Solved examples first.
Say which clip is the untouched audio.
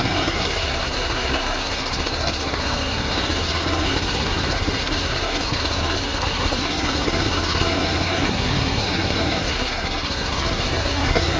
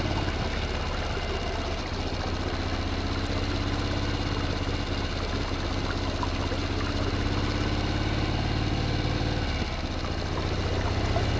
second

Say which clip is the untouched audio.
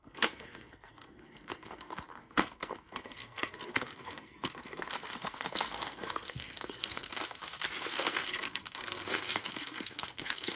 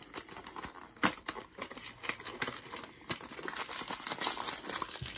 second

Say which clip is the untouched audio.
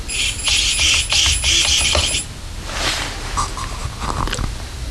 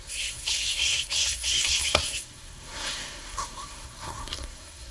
first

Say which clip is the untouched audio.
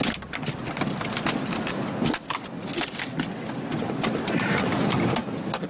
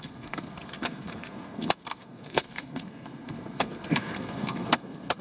first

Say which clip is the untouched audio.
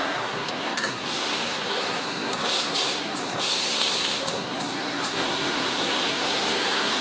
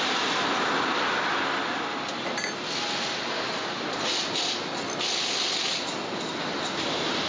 second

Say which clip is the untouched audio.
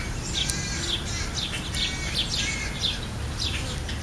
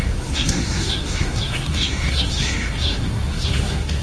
first